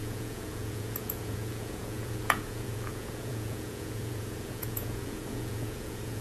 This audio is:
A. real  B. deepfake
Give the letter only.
B